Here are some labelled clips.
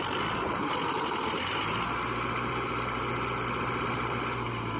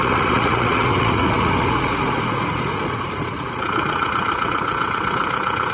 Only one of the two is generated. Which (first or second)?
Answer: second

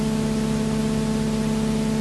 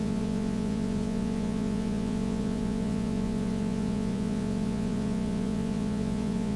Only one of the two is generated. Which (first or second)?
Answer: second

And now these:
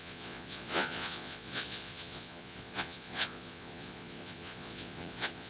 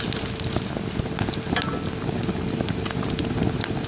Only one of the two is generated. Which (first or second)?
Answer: first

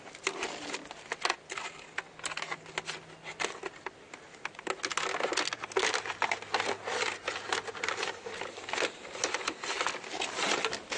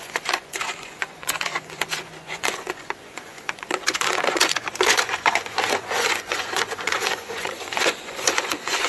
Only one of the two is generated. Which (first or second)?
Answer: second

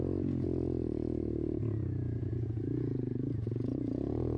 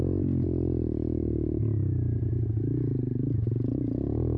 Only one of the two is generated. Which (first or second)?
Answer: first